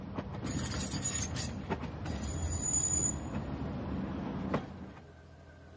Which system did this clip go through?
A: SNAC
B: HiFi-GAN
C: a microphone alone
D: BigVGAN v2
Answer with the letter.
C